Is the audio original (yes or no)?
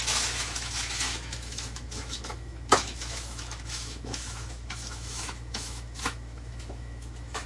no